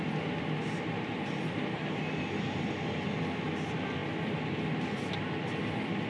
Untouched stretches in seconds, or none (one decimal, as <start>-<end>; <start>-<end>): 0.0-6.1